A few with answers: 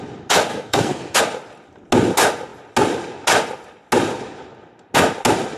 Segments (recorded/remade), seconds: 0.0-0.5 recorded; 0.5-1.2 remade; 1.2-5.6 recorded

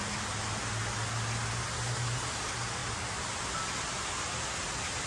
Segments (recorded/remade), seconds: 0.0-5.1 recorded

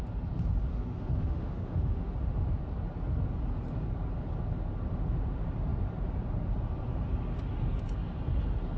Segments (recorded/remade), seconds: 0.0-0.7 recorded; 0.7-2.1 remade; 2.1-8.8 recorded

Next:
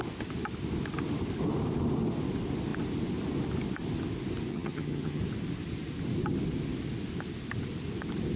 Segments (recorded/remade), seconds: 0.0-4.5 recorded; 4.5-5.2 remade; 5.2-8.4 recorded

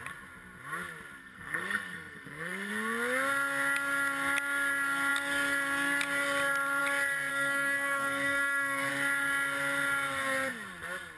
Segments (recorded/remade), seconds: 0.0-1.2 recorded; 1.2-2.7 remade; 2.7-7.3 recorded; 7.3-8.9 remade; 8.9-11.2 recorded

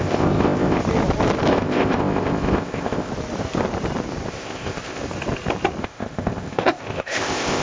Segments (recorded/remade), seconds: 0.0-0.8 remade; 0.8-1.5 recorded; 1.5-3.1 remade; 3.1-4.3 recorded; 4.3-5.0 remade; 5.0-5.8 recorded; 5.8-7.6 remade

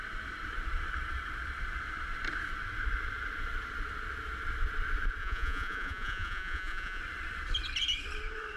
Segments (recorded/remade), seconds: 0.0-5.2 recorded; 5.2-7.0 remade; 7.0-8.6 recorded

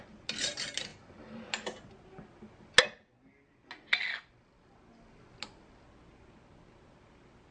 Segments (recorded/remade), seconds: 0.0-7.5 recorded